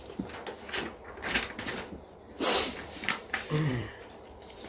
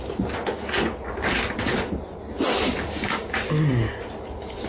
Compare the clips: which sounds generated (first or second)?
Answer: first